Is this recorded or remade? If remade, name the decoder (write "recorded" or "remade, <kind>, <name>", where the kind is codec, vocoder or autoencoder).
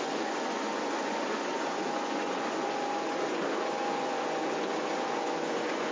remade, vocoder, Vocos